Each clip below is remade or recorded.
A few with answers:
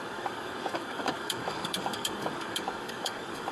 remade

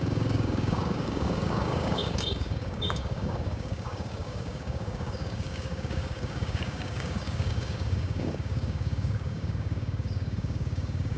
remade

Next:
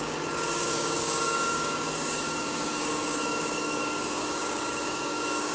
remade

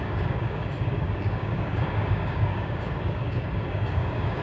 remade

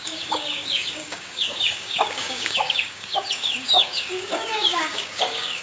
remade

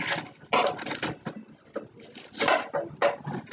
recorded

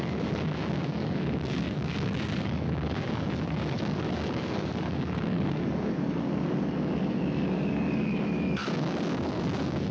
remade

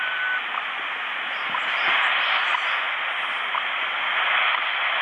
recorded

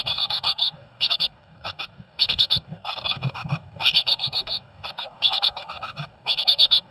remade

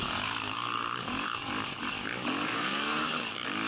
remade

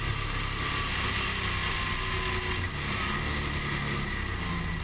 recorded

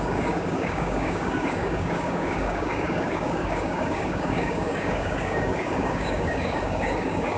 remade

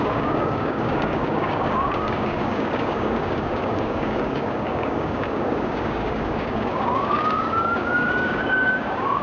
remade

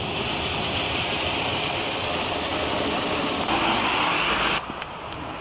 recorded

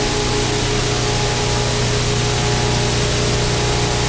recorded